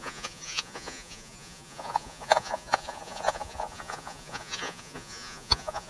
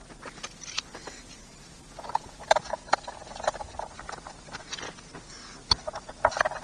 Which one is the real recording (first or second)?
second